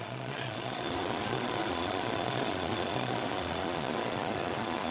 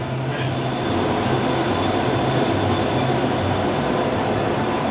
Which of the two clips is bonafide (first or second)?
second